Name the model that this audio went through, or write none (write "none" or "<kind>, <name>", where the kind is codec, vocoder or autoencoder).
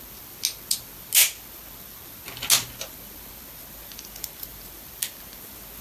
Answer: none